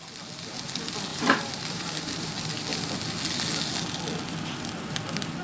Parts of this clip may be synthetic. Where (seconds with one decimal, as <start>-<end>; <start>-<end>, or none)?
1.1-2.3